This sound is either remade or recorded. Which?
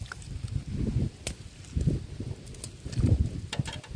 recorded